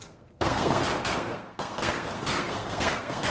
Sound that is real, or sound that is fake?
fake